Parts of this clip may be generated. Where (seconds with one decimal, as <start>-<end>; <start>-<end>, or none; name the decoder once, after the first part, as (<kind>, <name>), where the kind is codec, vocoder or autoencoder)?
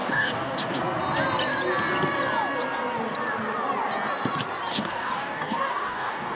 0.0-0.8 (codec, DAC); 4.7-6.4